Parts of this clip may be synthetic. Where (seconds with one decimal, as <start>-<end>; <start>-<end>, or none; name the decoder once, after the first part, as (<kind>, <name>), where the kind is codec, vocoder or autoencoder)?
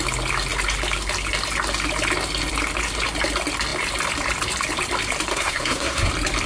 5.3-6.1 (codec, SNAC)